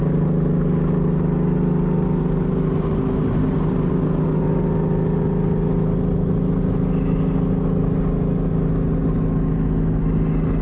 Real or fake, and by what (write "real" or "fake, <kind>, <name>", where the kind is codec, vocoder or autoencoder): real